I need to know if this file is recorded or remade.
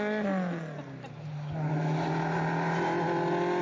recorded